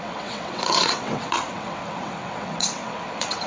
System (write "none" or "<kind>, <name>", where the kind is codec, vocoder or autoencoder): vocoder, WaveNeXt